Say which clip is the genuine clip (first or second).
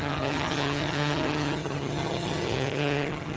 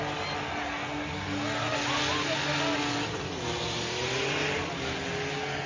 second